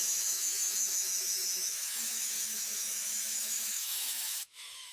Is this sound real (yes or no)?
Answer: no